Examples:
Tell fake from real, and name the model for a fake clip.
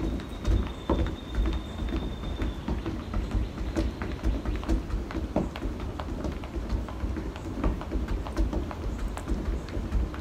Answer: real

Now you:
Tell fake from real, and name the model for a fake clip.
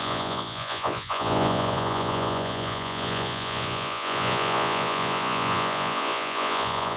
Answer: fake, vocoder, Vocos